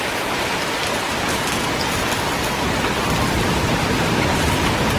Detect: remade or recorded recorded